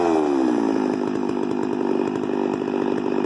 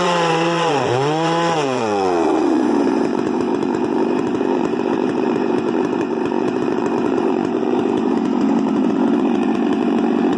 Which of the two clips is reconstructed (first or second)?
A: second